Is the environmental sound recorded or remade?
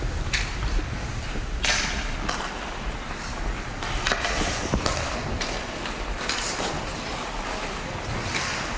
recorded